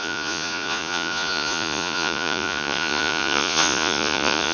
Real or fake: fake